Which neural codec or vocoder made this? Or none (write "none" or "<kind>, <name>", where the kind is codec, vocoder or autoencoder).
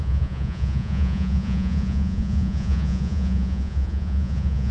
vocoder, Vocos